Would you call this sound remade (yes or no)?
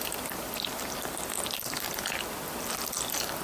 yes